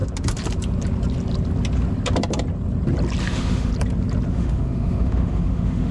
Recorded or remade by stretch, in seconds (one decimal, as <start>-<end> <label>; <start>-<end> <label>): 0.0-3.2 recorded; 3.2-3.7 remade; 3.7-4.3 recorded; 4.3-5.9 remade